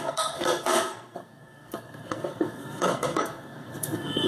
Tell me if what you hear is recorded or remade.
remade